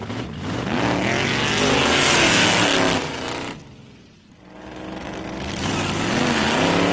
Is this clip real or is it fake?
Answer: real